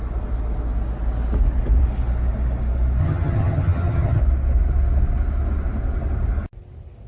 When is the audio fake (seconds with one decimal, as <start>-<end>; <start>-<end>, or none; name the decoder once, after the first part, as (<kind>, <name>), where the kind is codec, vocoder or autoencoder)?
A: 3.0-4.2 (vocoder, HiFi-GAN)